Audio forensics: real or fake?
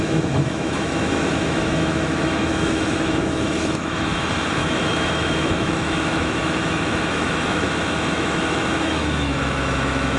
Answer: fake